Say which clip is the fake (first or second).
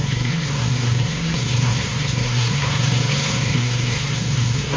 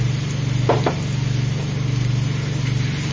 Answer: first